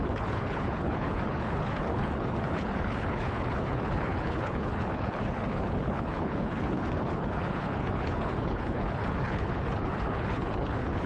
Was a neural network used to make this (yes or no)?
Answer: yes